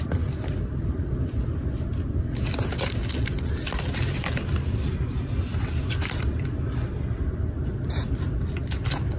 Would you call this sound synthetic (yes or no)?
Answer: no